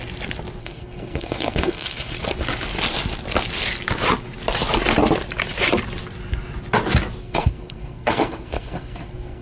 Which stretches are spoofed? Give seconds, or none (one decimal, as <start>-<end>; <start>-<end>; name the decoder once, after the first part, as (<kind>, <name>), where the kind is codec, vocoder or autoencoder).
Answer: 0.6-2.2 (codec, SNAC); 7.2-9.4